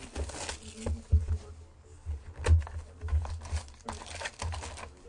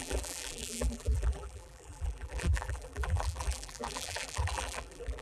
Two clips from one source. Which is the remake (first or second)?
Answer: second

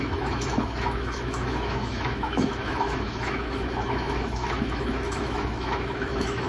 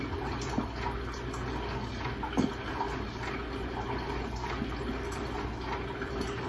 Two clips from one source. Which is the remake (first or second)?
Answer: first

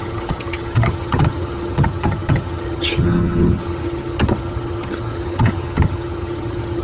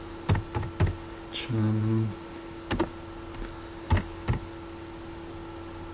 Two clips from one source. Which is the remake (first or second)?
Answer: first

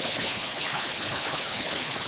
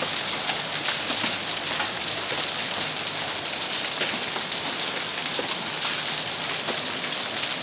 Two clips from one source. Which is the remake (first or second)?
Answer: first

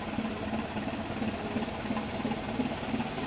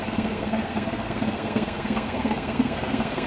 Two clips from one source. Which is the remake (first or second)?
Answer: second